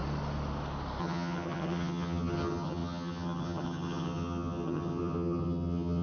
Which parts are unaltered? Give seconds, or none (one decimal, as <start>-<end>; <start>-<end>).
0.0-1.0